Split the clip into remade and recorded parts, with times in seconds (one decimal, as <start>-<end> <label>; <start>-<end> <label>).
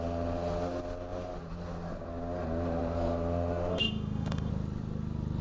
0.0-3.7 recorded; 3.7-4.5 remade; 4.5-5.4 recorded